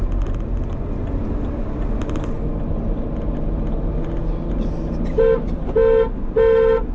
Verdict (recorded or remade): recorded